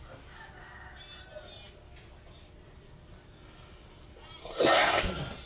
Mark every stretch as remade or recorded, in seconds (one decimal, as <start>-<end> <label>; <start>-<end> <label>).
0.0-4.4 recorded; 4.4-5.0 remade; 5.0-5.5 recorded